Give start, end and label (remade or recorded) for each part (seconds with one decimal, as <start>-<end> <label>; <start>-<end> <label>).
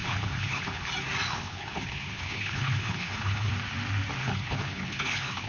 0.0-0.9 remade; 0.9-1.3 recorded; 1.3-3.5 remade; 3.5-4.2 recorded; 4.2-5.5 remade